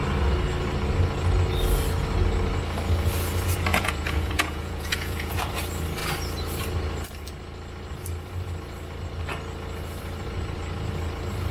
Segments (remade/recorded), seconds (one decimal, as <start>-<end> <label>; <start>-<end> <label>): 0.0-3.7 recorded; 3.7-5.4 remade; 5.4-11.5 recorded